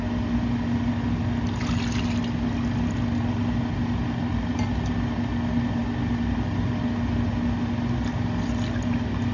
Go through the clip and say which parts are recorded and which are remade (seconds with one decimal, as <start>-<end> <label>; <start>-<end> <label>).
0.0-9.3 recorded